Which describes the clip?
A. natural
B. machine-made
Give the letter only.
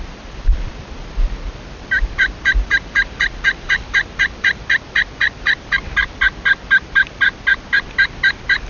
A